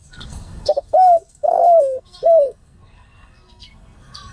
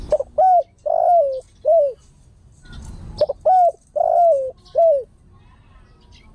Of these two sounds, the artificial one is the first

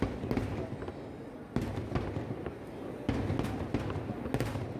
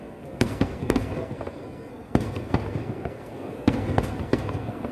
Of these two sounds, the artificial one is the second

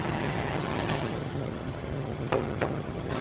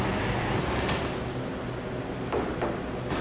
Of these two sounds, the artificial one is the first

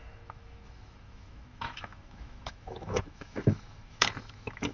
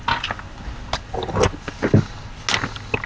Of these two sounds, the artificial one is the first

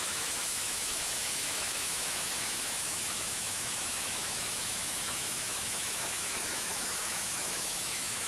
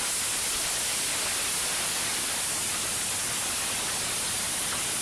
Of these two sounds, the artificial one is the first